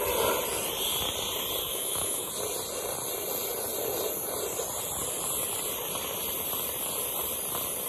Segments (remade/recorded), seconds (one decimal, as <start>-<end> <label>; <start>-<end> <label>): 0.0-1.6 recorded; 1.6-2.3 remade; 2.3-7.9 recorded